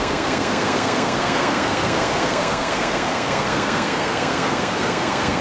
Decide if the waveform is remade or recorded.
remade